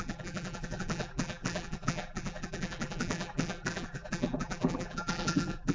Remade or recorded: remade